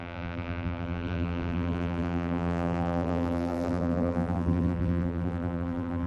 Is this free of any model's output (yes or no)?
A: no